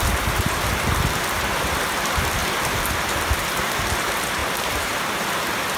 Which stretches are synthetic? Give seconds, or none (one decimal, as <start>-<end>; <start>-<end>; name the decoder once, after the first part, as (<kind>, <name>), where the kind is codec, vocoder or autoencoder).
0.0-5.8 (vocoder, BigVGAN v2)